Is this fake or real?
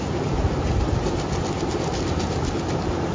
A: real